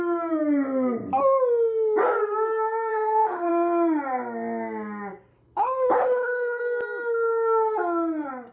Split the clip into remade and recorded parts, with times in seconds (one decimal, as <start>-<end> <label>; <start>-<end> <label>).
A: 0.0-2.9 recorded; 2.9-3.5 remade; 3.5-5.3 recorded; 5.3-6.6 remade; 6.6-8.5 recorded